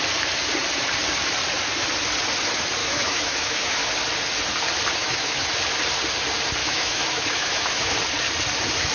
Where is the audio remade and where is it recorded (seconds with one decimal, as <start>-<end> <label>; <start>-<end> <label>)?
0.0-2.8 recorded; 2.8-3.9 remade; 3.9-5.0 recorded; 5.0-5.5 remade; 5.5-6.6 recorded; 6.6-7.9 remade; 7.9-8.9 recorded